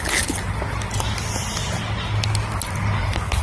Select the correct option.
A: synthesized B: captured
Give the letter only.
B